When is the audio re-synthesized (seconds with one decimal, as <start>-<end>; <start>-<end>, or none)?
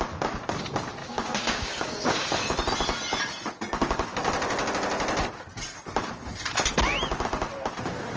1.0-2.2